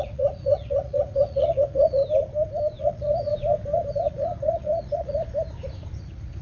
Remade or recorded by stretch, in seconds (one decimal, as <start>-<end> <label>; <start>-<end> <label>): 0.0-2.0 remade; 2.0-2.8 recorded; 2.8-3.3 remade; 3.3-3.9 recorded; 3.9-5.2 remade; 5.2-6.0 recorded; 6.0-6.4 remade